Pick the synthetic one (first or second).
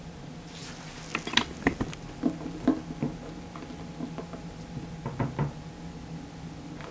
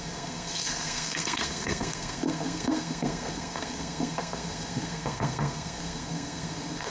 second